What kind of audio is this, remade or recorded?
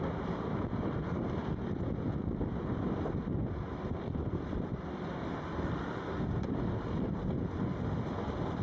recorded